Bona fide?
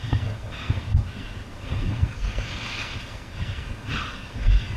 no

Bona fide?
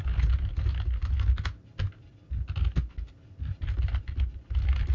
yes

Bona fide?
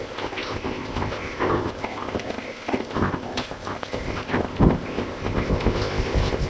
no